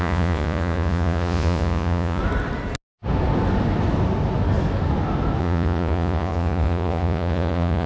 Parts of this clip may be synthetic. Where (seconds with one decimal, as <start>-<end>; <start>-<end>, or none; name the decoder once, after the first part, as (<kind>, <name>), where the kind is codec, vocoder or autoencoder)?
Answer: 0.0-2.2 (vocoder, Vocos); 5.4-7.9